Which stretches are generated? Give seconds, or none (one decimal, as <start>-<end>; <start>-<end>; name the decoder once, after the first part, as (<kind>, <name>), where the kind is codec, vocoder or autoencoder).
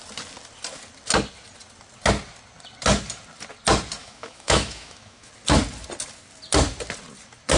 4.0-5.3 (autoencoder, DAC-VAE)